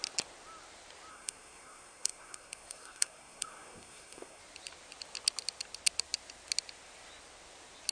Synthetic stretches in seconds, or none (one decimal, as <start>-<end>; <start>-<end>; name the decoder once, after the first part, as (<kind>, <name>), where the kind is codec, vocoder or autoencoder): 1.1-4.4 (codec, SNAC)